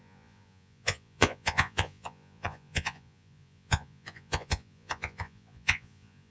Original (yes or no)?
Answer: no